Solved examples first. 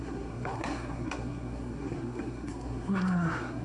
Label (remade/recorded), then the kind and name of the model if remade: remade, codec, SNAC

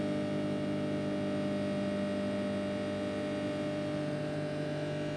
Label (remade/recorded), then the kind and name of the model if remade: recorded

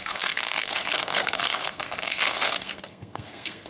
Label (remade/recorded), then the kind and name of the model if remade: remade, codec, SNAC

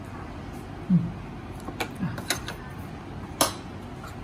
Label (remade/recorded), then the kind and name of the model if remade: recorded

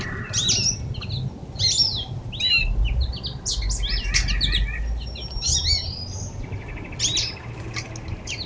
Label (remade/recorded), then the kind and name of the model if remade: recorded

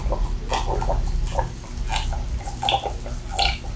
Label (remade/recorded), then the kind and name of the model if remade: recorded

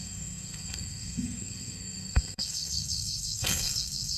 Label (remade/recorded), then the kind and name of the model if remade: remade, codec, SNAC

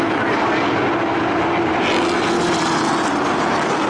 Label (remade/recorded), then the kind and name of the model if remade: recorded